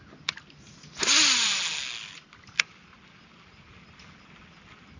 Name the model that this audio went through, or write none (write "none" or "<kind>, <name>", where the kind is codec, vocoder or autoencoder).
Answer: none